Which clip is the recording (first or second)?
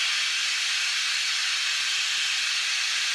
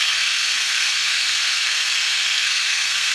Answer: first